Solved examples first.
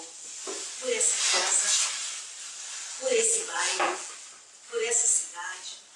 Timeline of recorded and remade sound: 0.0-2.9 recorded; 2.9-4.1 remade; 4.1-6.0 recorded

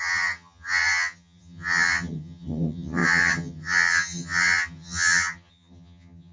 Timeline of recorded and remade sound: 0.0-6.3 remade

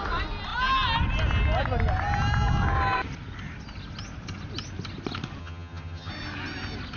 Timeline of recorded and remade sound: 0.0-5.4 recorded; 5.4-6.1 remade; 6.1-7.0 recorded

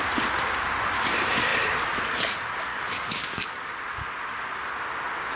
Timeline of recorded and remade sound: 0.0-2.7 recorded; 2.7-3.7 remade; 3.7-5.4 recorded